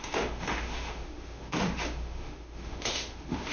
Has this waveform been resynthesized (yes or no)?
yes